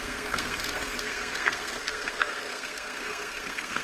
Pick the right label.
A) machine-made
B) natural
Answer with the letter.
A